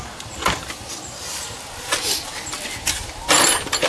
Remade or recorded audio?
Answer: recorded